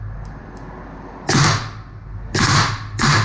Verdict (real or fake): real